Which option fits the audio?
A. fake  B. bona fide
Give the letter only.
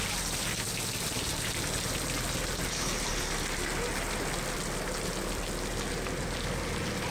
B